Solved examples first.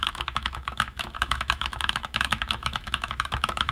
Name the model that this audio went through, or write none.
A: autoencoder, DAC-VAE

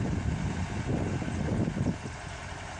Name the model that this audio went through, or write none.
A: none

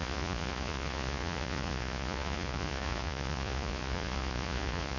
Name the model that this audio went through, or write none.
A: vocoder, Vocos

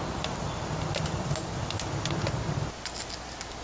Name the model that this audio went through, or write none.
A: none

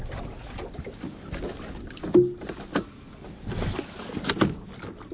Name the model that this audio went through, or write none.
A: none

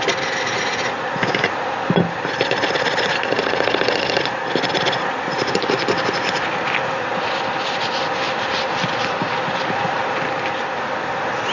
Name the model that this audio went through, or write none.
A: none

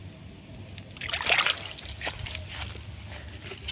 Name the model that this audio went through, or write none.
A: none